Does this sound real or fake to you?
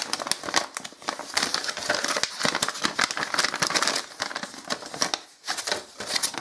real